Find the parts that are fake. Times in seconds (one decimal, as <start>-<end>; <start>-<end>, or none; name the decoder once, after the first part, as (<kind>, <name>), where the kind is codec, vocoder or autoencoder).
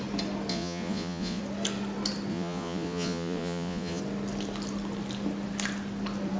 0.5-1.4 (vocoder, Vocos); 2.3-4.0